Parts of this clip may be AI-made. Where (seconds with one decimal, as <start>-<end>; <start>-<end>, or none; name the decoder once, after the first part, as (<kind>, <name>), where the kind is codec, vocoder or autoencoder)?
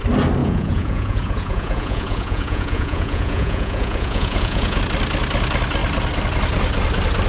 0.4-4.8 (vocoder, Vocos)